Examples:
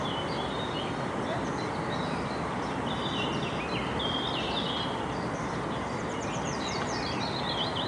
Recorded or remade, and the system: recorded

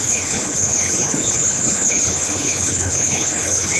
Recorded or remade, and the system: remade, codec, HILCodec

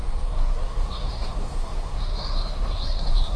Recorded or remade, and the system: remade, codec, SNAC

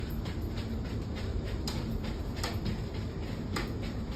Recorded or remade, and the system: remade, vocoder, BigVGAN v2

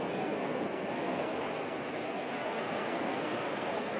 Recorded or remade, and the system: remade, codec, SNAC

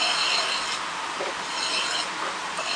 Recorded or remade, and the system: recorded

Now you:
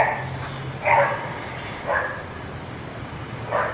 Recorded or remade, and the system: recorded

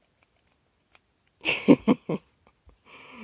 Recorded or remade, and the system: recorded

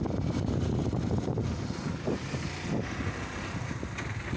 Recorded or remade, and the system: recorded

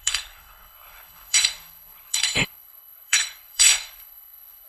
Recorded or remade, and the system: remade, codec, HILCodec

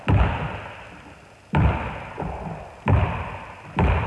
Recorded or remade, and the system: recorded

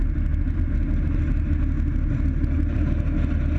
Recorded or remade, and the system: recorded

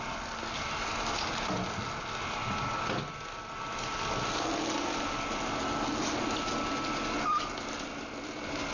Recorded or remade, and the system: recorded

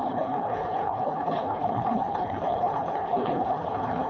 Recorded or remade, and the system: remade, codec, HILCodec